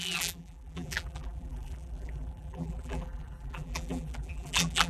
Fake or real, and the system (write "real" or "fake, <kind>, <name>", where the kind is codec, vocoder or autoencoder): fake, vocoder, BigVGAN v2